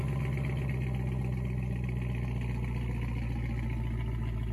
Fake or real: real